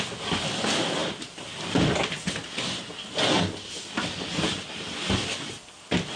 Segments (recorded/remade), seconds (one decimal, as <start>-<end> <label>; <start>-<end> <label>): 0.0-6.2 recorded